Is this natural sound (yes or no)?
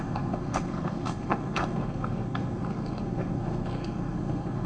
no